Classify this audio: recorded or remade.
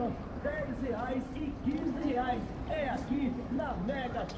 remade